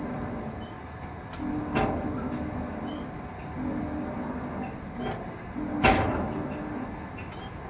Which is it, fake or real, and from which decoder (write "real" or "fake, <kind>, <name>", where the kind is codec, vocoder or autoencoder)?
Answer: real